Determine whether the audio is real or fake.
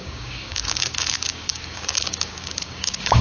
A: fake